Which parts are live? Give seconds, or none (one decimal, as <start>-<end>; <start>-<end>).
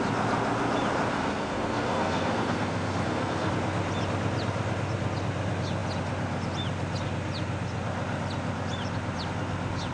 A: 0.0-1.1; 3.5-9.9